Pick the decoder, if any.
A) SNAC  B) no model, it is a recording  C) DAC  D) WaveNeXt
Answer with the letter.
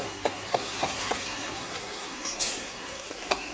A